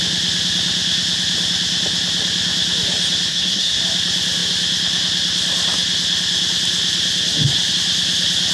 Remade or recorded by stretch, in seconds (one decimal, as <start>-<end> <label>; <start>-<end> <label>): 0.0-3.3 recorded; 3.3-3.8 remade; 3.8-8.5 recorded